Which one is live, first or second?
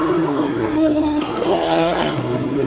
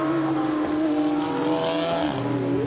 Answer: second